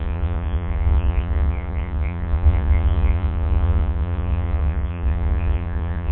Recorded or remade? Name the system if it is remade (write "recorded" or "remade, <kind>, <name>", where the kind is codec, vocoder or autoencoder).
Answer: remade, vocoder, Vocos